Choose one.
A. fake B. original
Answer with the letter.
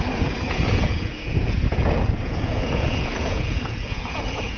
A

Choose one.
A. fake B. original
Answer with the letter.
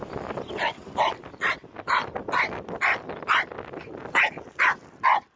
B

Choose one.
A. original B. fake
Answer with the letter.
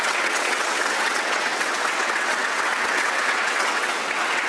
B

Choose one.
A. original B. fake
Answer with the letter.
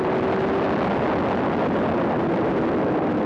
A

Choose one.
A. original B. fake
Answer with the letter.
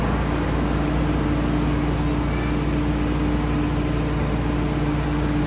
A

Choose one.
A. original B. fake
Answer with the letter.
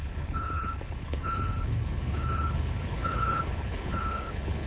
B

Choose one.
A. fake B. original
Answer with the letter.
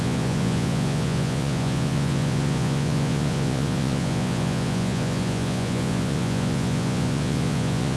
A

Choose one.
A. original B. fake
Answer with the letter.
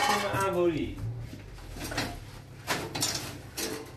A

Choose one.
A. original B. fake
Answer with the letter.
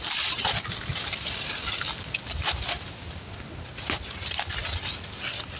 A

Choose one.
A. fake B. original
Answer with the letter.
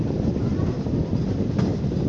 B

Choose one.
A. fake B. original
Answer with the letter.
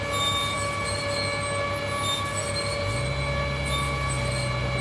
B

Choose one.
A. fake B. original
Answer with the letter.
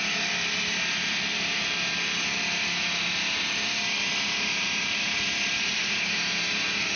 B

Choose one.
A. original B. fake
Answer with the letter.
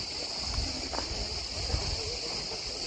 A